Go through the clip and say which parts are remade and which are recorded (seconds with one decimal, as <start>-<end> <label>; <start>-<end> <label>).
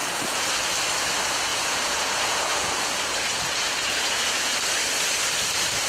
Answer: 0.0-0.5 remade; 0.5-1.5 recorded; 1.5-4.5 remade; 4.5-5.9 recorded